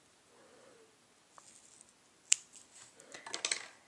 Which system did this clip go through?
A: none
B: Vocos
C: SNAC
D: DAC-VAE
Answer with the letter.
A